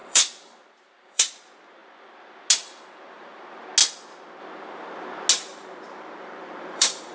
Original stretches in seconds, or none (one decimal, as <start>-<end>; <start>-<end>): 1.4-5.5